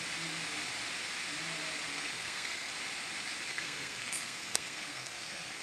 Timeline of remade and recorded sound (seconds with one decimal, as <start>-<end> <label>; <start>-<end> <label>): 0.0-1.9 recorded; 1.9-2.7 remade; 2.7-3.5 recorded; 3.5-5.6 remade